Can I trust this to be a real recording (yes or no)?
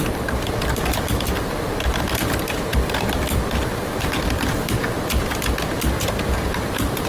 no